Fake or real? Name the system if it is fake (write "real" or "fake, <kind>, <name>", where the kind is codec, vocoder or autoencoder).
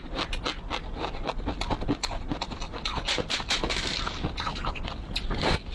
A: real